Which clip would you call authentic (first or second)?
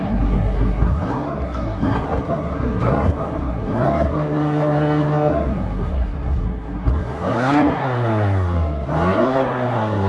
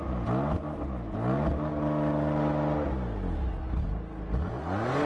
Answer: second